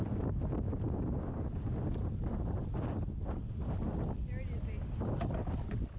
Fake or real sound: real